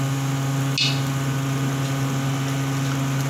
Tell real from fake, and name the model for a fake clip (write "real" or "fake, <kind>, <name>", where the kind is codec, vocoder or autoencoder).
real